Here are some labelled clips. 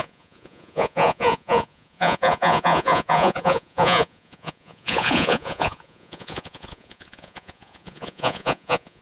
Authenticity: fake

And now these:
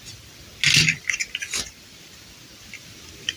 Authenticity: real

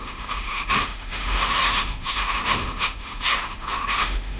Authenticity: fake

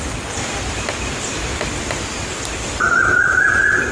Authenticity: real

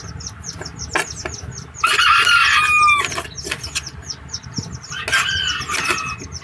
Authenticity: real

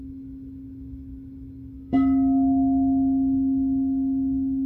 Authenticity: fake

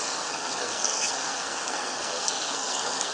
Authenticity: fake